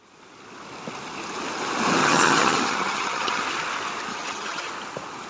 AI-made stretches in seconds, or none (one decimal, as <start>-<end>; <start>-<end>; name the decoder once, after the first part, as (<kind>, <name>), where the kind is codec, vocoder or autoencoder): 2.0-3.4 (vocoder, HiFi-GAN); 4.1-4.7